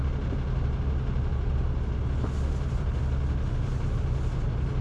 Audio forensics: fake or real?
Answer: real